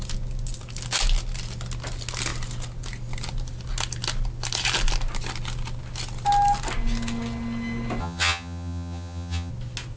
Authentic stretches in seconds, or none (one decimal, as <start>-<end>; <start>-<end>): 0.0-8.0; 9.5-10.0